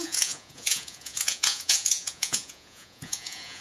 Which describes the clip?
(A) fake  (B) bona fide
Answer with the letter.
A